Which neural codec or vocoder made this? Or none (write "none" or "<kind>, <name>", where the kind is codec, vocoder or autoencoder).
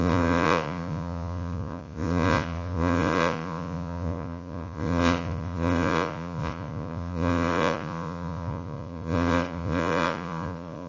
vocoder, Vocos